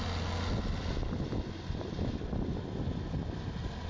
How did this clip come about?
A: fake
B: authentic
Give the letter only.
B